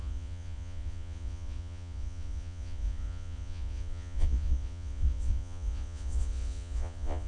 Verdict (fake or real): fake